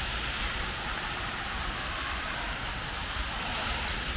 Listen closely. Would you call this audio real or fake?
real